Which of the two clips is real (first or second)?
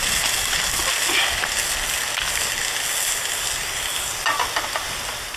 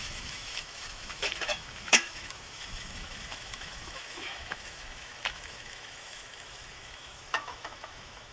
first